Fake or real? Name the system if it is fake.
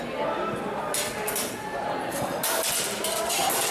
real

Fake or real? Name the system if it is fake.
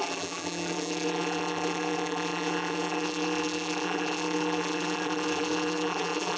fake, vocoder, BigVGAN v2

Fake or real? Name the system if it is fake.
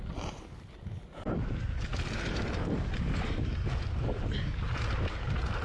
real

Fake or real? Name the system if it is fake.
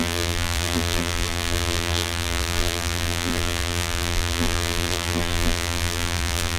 fake, vocoder, BigVGAN v2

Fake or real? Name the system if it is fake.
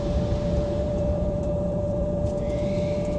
fake, vocoder, BigVGAN v2